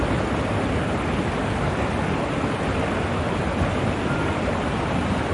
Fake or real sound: real